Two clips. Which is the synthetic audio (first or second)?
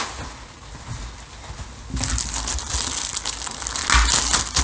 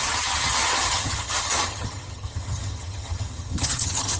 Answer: second